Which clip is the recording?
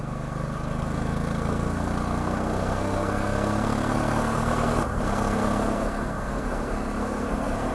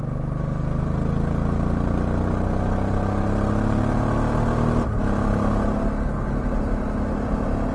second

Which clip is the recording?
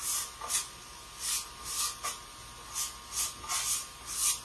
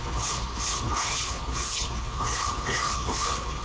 first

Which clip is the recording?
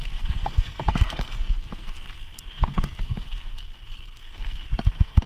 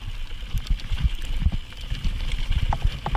second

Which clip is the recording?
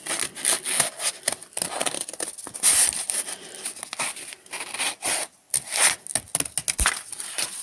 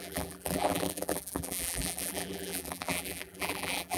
first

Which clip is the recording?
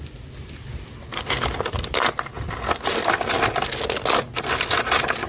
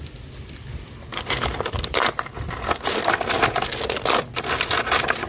first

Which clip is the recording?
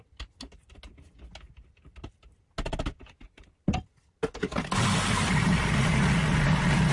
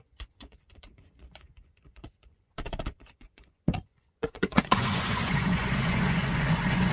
first